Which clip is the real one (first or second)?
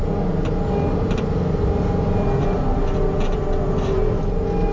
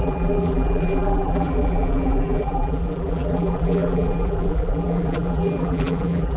first